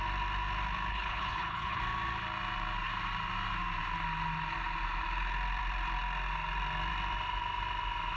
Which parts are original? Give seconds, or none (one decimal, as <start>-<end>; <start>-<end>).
0.0-0.9; 1.8-8.2